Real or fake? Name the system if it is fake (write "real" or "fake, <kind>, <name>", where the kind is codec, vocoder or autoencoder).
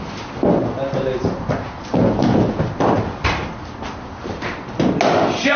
real